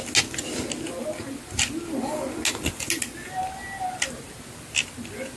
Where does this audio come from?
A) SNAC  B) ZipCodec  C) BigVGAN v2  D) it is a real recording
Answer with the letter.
D